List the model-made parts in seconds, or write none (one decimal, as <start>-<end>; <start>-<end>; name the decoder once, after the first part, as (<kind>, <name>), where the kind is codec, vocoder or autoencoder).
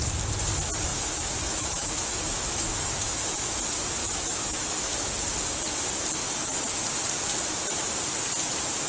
0.9-3.6 (autoencoder, DAC-VAE); 4.0-4.9; 6.2-6.8